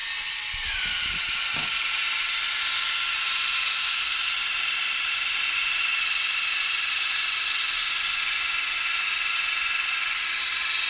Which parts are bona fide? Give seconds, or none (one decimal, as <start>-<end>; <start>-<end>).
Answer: 0.0-10.9